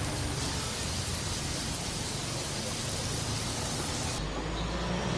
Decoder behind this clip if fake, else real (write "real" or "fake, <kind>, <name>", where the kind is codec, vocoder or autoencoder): real